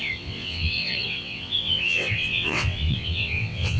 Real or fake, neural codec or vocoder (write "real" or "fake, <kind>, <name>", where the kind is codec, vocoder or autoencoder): fake, vocoder, WaveNeXt